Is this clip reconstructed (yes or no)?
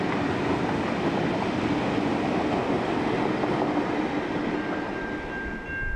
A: no